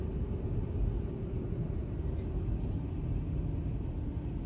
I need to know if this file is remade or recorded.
recorded